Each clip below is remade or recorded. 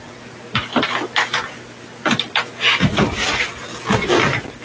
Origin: recorded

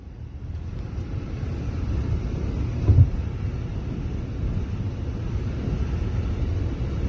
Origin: recorded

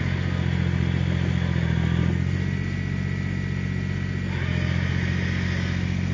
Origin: recorded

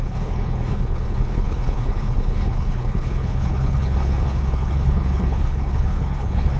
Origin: remade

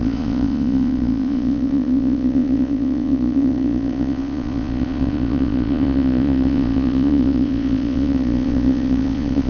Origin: remade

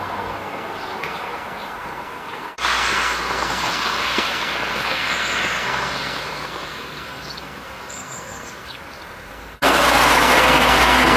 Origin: remade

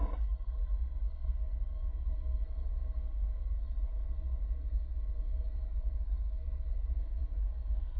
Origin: remade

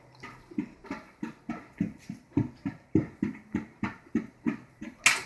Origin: recorded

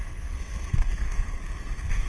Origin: remade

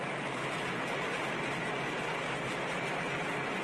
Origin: recorded